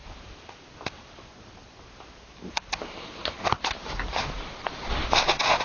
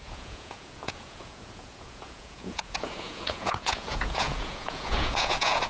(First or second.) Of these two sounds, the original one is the first